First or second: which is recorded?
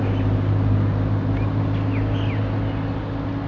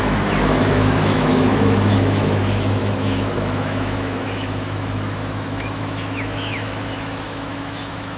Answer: first